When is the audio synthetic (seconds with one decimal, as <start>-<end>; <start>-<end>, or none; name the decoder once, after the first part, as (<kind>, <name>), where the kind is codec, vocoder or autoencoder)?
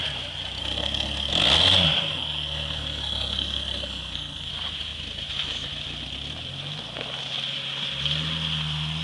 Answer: 0.6-1.3 (codec, SNAC); 2.1-4.5